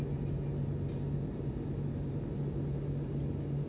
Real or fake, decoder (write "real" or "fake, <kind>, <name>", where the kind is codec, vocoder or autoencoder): real